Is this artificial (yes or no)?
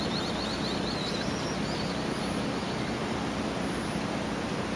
no